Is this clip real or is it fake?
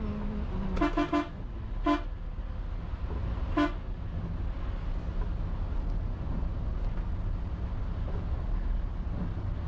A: real